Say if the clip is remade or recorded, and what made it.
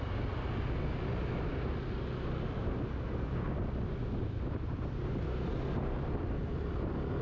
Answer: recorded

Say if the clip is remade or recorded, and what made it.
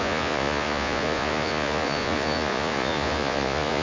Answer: remade, vocoder, Vocos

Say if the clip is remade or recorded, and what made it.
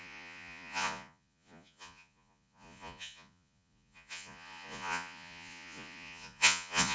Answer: remade, vocoder, Vocos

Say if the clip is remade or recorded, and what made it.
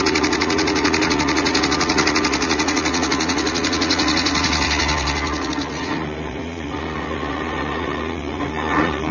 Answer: remade, vocoder, Vocos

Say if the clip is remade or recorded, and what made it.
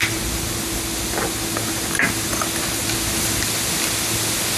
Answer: recorded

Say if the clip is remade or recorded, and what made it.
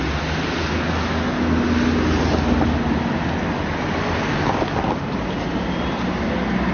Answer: recorded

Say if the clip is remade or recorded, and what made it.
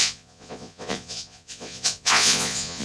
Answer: remade, vocoder, Vocos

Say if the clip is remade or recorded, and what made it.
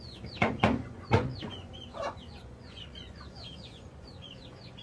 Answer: remade, vocoder, Vocos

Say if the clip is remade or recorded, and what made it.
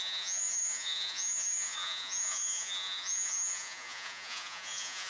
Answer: remade, vocoder, Vocos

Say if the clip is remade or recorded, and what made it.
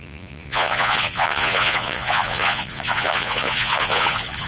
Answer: remade, vocoder, Vocos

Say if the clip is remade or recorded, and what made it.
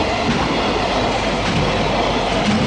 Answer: recorded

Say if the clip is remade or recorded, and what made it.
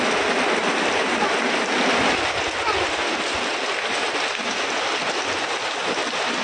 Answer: recorded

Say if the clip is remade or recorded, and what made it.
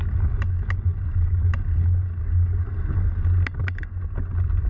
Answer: recorded